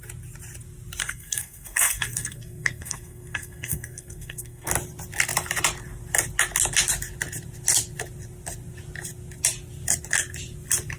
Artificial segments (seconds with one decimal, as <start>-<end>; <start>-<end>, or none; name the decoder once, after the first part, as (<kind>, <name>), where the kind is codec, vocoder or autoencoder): 1.0-4.7 (codec, SNAC)